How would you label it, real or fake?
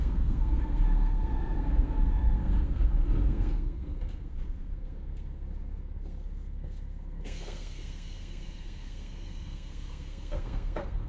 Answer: fake